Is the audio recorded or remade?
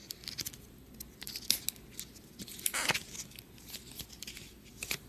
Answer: recorded